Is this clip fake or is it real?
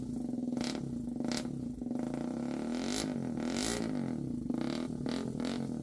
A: real